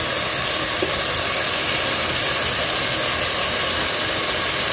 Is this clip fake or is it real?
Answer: real